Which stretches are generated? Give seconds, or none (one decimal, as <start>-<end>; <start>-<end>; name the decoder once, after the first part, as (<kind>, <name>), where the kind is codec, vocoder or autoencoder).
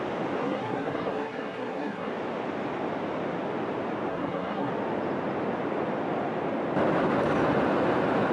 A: 0.4-2.1 (codec, SNAC); 4.1-4.7